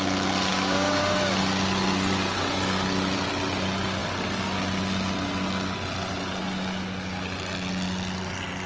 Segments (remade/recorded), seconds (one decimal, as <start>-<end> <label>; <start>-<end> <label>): 0.0-0.5 recorded; 0.5-1.3 remade; 1.3-8.7 recorded